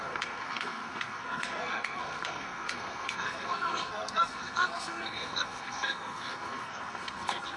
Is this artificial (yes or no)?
yes